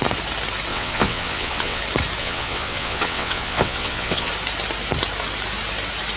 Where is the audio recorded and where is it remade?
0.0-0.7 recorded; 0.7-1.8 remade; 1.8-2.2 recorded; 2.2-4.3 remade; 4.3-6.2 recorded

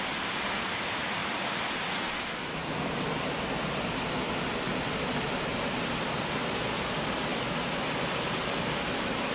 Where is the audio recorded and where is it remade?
0.0-1.2 recorded; 1.2-2.2 remade; 2.2-2.6 recorded; 2.6-3.4 remade; 3.4-9.3 recorded

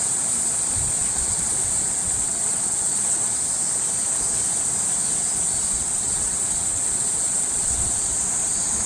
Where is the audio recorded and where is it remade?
0.0-1.0 recorded; 1.0-1.6 remade; 1.6-2.0 recorded; 2.0-3.4 remade; 3.4-5.7 recorded; 5.7-8.0 remade; 8.0-8.9 recorded

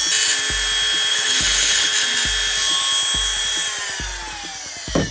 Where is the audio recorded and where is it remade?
0.0-1.1 recorded; 1.1-1.9 remade; 1.9-5.1 recorded

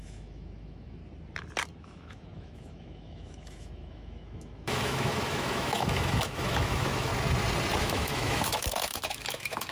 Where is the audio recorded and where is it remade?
0.0-1.0 remade; 1.0-1.8 recorded; 1.8-7.1 remade; 7.1-7.8 recorded; 7.8-9.7 remade

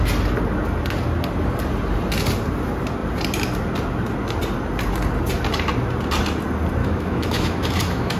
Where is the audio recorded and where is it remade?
0.0-6.8 recorded; 6.8-8.2 remade

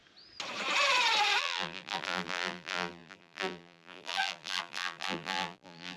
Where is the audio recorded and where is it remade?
0.0-1.4 recorded; 1.4-6.0 remade

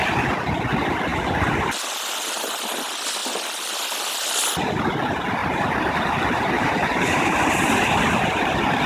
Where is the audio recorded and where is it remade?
0.0-5.4 recorded; 5.4-7.5 remade; 7.5-8.9 recorded